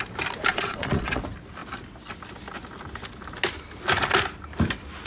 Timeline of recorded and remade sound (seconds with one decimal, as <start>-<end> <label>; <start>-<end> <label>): 0.0-0.5 recorded; 0.5-1.2 remade; 1.2-5.1 recorded